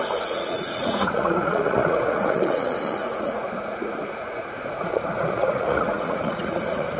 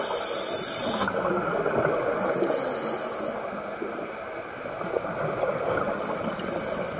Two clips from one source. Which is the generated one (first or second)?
first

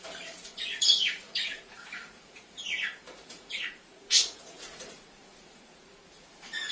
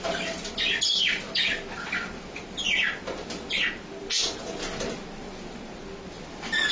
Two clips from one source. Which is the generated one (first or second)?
first